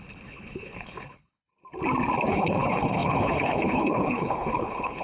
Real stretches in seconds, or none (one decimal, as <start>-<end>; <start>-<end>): 1.5-2.3